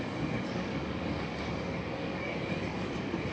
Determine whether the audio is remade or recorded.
remade